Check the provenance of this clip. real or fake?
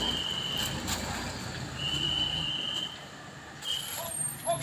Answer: real